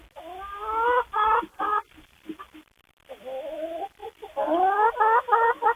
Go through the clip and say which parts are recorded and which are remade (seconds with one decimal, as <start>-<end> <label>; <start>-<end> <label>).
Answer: 0.0-1.7 recorded; 1.7-2.7 remade; 2.7-4.0 recorded; 4.0-5.0 remade; 5.0-5.8 recorded